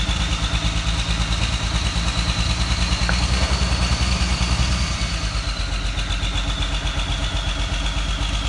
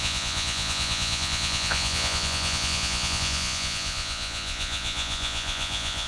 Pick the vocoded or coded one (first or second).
second